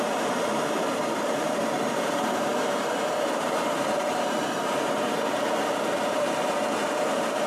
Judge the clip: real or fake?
fake